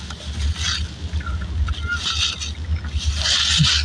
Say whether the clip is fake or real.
real